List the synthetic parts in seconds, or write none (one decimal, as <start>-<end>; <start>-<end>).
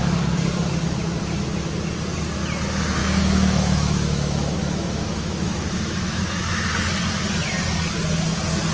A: 3.0-6.7